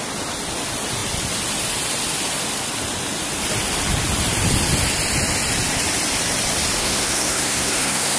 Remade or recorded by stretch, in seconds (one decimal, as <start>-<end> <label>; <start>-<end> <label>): 0.0-6.8 recorded; 6.8-8.2 remade